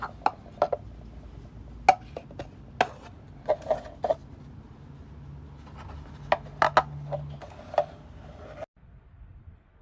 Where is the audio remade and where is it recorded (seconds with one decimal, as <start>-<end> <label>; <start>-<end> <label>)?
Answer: 0.0-9.8 recorded